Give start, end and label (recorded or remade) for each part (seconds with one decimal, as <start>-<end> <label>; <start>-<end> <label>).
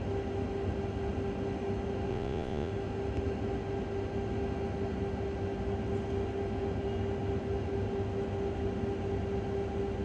0.0-2.1 recorded; 2.1-2.7 remade; 2.7-10.0 recorded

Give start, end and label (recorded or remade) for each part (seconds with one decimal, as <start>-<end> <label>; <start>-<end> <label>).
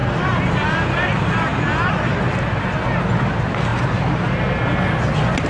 0.0-0.5 remade; 0.5-5.5 recorded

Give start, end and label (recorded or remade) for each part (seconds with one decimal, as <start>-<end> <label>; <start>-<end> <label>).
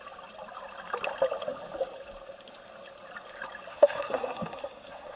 0.0-3.7 recorded; 3.7-5.2 remade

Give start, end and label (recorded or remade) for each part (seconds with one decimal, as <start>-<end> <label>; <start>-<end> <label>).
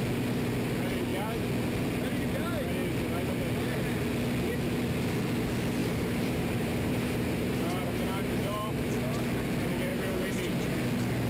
0.0-5.8 recorded; 5.8-8.9 remade; 8.9-11.3 recorded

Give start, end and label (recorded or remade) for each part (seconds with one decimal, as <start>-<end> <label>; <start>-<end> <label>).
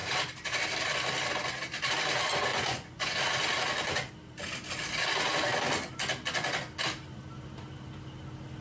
0.0-2.5 recorded; 2.5-3.2 remade; 3.2-8.6 recorded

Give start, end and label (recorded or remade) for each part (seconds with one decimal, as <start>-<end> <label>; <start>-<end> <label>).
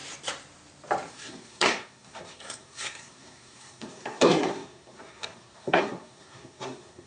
0.0-1.1 recorded; 1.1-7.1 remade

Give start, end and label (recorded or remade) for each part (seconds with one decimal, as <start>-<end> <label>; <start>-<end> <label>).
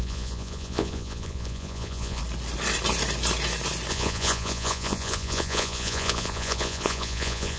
0.0-2.2 remade; 2.2-3.9 recorded; 3.9-7.6 remade